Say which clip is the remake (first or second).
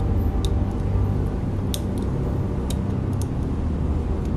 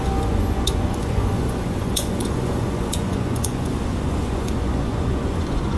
second